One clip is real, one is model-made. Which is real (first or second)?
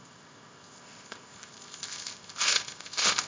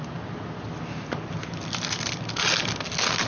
second